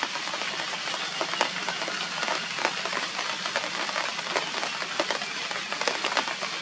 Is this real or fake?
real